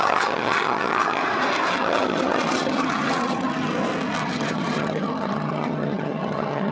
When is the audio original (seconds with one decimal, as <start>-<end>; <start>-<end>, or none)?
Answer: 1.2-1.7; 3.7-4.2